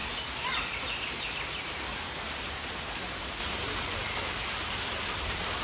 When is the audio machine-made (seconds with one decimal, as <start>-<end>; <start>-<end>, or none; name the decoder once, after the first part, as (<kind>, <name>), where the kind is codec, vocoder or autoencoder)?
3.2-5.6 (vocoder, BigVGAN v2)